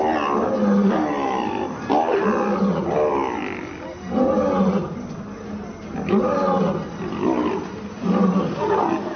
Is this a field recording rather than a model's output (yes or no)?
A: yes